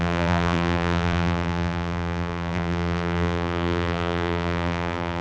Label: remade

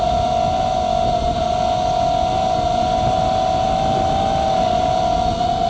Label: recorded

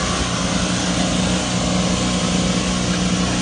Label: recorded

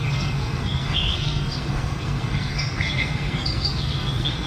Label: remade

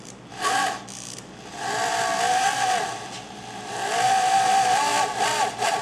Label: recorded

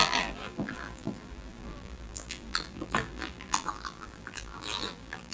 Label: remade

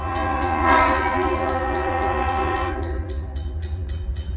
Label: remade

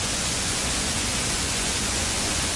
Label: remade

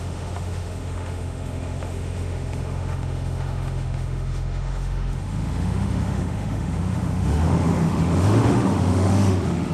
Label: remade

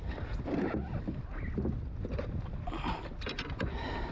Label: recorded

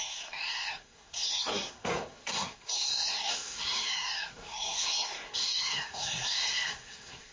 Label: remade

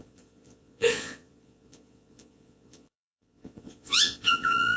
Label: remade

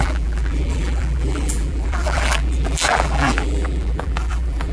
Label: remade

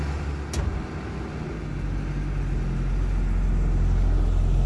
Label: recorded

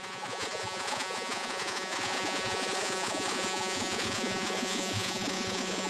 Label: remade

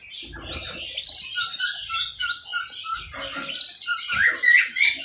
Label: recorded